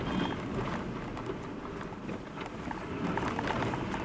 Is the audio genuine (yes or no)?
yes